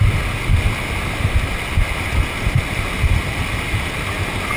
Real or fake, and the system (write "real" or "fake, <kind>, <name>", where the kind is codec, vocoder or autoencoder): real